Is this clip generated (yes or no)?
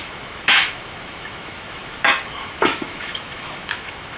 yes